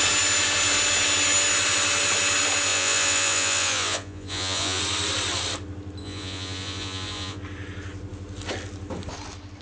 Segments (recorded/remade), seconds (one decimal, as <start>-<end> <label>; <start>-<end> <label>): 0.0-2.7 recorded; 2.7-4.8 remade; 4.8-6.0 recorded; 6.0-7.4 remade; 7.4-9.6 recorded